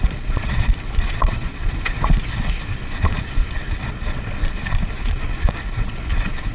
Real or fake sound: fake